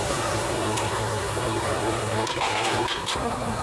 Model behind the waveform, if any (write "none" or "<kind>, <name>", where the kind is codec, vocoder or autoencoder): codec, SNAC